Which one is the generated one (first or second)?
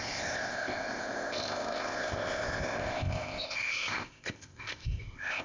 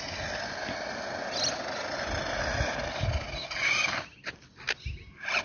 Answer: first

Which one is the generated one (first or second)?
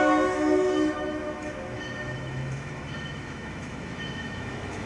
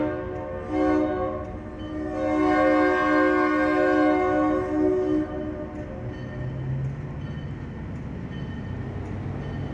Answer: first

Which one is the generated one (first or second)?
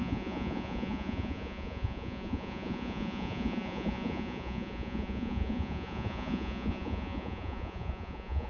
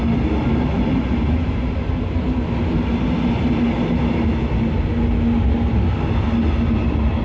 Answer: first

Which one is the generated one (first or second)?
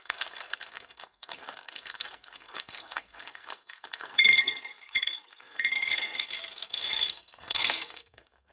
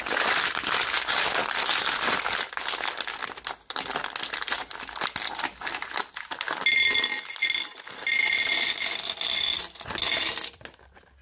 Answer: first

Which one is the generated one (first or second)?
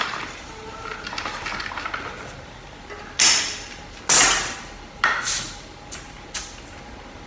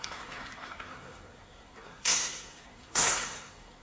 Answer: second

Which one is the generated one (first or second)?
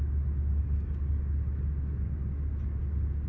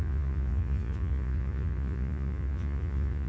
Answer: second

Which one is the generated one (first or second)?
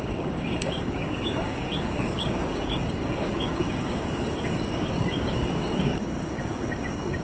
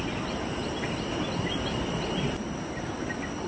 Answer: first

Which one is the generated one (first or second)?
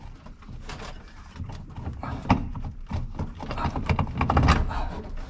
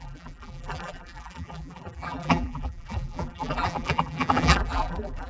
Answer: second